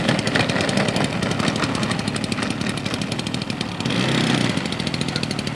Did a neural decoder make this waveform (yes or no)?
no